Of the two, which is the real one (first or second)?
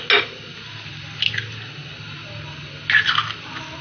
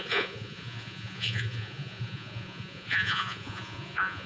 first